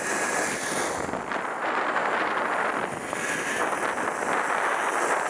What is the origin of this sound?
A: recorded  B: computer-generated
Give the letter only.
A